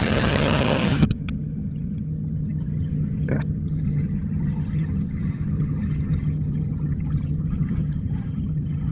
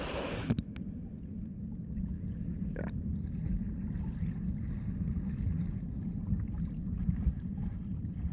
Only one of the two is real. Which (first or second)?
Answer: second